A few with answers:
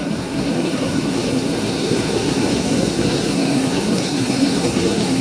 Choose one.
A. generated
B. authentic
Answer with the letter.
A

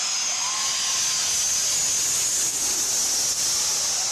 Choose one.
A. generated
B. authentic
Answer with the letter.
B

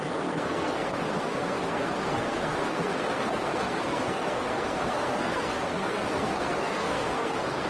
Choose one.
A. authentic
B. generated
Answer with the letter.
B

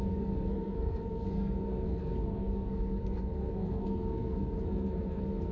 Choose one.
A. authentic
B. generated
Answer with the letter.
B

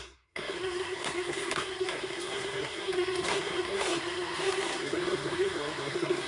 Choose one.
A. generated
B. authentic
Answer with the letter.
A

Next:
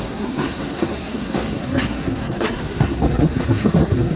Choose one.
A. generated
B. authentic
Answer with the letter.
A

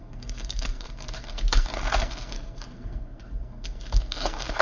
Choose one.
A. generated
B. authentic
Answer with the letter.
A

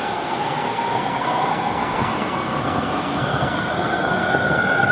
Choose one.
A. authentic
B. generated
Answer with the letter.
B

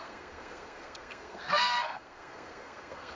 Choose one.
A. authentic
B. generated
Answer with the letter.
B